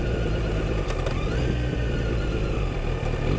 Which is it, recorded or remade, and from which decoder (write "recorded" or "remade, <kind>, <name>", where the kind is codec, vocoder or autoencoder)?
recorded